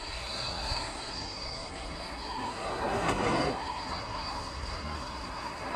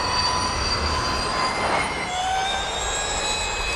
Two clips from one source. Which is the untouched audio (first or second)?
second